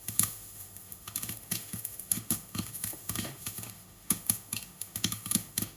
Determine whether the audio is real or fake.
fake